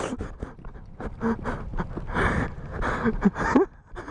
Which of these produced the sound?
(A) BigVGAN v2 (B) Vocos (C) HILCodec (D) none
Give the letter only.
D